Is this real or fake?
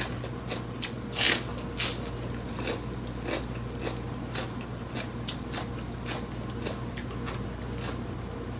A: real